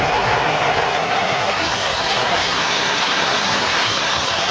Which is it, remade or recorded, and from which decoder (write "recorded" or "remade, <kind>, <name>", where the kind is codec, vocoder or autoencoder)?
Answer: remade, codec, SNAC